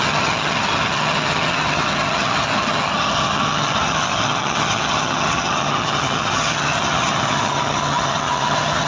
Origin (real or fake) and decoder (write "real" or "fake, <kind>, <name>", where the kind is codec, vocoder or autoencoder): fake, vocoder, HiFi-GAN